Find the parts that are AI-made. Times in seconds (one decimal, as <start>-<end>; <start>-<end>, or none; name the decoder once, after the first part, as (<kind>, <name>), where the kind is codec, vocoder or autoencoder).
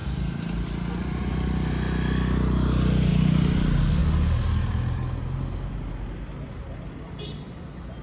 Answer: none